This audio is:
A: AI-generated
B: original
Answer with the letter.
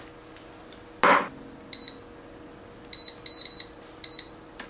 B